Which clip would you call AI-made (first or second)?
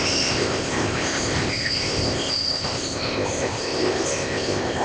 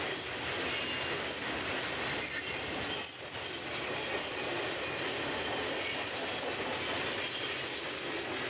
first